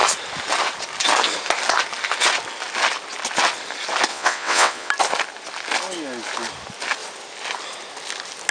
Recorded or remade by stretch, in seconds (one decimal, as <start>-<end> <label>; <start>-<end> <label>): 0.0-4.1 recorded; 4.1-4.9 remade; 4.9-8.5 recorded